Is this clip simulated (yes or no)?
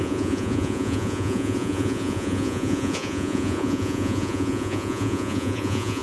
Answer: yes